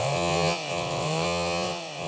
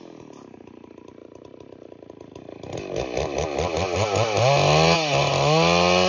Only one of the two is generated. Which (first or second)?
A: first